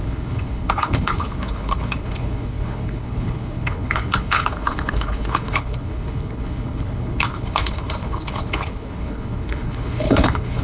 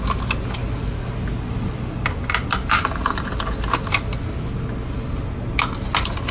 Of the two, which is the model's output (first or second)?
first